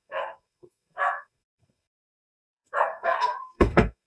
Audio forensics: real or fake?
fake